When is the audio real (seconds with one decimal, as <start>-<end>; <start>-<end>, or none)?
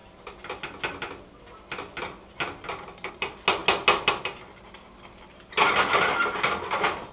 0.0-7.1